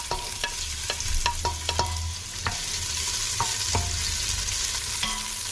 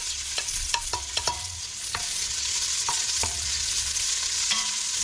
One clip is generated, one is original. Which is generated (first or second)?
second